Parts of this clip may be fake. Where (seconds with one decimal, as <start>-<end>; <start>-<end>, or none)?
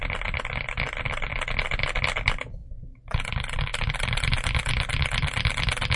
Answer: none